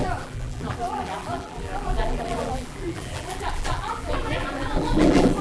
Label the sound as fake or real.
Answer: fake